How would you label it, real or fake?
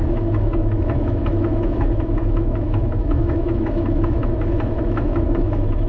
fake